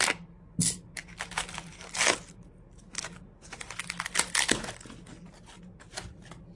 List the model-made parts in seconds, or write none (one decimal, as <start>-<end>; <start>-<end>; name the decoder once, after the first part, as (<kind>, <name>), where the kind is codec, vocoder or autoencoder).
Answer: none